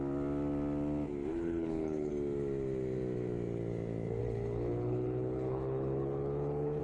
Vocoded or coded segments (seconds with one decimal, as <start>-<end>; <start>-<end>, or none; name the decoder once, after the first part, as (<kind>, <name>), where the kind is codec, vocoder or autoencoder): 1.3-2.1 (codec, HILCodec); 4.2-6.8

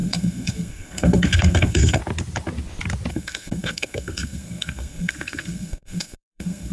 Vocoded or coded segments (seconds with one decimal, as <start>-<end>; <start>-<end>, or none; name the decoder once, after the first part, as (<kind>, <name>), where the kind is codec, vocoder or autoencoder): 0.0-2.0 (codec, SNAC); 3.1-6.7

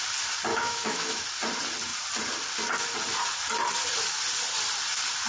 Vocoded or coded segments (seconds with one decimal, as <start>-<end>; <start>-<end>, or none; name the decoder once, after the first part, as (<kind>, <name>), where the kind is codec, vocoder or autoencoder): 0.5-1.2 (autoencoder, DAC-VAE)